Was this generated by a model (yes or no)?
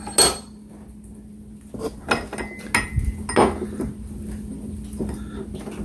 no